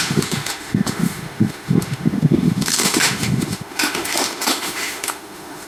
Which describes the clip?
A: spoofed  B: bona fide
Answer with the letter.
A